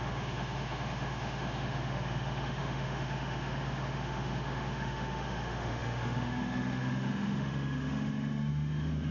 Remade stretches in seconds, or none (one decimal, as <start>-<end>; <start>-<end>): 0.0-9.1